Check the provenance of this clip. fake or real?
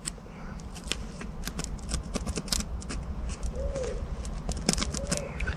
real